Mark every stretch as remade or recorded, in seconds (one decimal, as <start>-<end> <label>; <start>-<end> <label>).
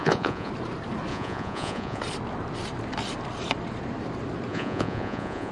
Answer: 0.0-0.5 remade; 0.5-1.1 recorded; 1.1-2.0 remade; 2.0-4.5 recorded; 4.5-5.5 remade